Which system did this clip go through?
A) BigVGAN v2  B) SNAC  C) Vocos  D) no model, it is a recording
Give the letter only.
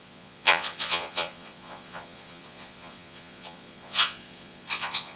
C